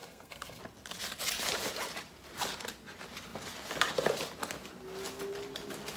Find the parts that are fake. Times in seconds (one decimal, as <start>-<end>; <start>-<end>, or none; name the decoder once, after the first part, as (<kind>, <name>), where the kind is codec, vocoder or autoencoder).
0.0-0.6 (codec, SNAC)